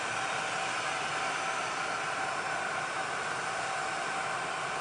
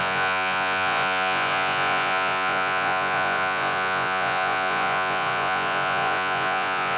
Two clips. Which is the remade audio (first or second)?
second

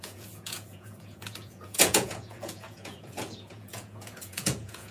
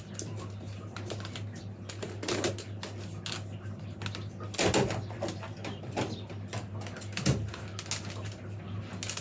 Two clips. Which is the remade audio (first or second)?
first